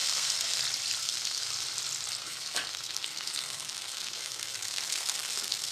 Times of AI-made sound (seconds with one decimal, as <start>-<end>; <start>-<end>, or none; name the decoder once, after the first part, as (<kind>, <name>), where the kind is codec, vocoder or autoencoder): 0.0-0.6 (codec, SNAC); 1.0-1.5; 2.2-5.7